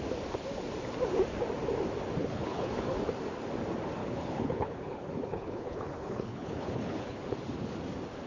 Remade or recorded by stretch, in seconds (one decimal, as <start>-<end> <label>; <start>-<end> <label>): 0.0-2.2 recorded; 2.2-2.7 remade; 2.7-4.0 recorded; 4.0-7.2 remade; 7.2-8.3 recorded